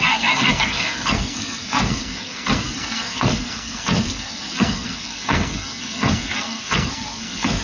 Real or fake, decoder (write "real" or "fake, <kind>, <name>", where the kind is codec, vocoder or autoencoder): fake, codec, SNAC